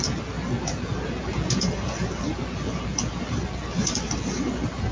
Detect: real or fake real